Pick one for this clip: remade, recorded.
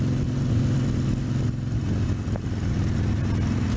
recorded